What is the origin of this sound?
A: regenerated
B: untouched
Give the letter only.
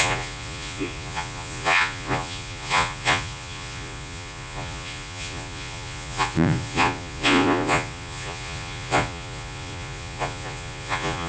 A